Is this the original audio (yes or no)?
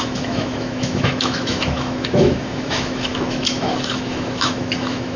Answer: no